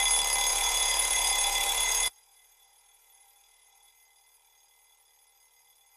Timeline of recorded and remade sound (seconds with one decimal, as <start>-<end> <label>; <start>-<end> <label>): 0.0-0.5 recorded; 0.5-3.9 remade; 3.9-6.0 recorded